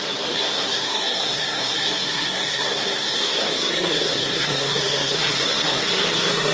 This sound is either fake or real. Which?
fake